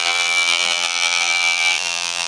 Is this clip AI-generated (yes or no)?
yes